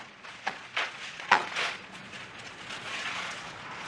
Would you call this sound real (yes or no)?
no